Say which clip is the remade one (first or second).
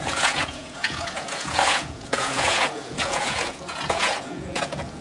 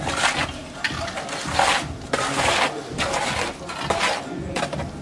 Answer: first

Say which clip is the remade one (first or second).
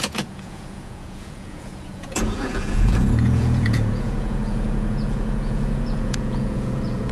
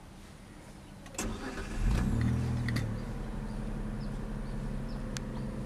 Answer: first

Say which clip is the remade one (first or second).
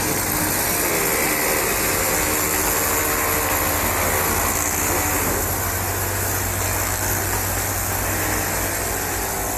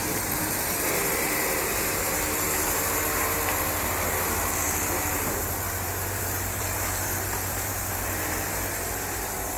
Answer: second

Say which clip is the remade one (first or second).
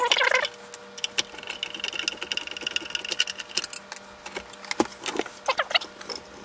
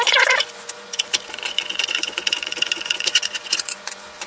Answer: second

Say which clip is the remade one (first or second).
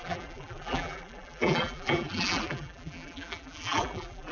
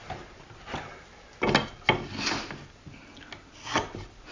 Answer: first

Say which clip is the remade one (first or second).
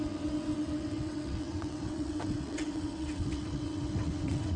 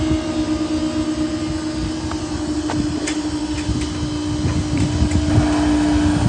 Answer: first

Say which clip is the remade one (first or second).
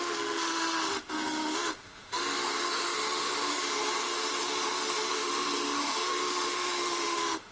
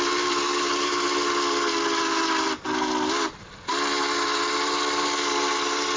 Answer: first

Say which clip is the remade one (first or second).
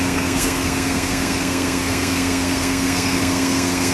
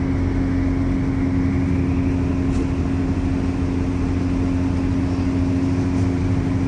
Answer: first